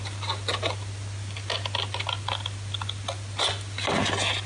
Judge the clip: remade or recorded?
recorded